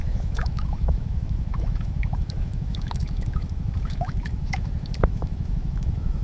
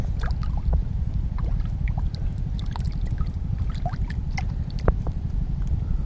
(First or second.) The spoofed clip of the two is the first